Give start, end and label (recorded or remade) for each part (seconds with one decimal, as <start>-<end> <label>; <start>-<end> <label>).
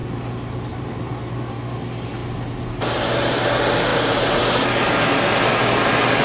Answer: 0.0-3.9 recorded; 3.9-4.4 remade; 4.4-6.2 recorded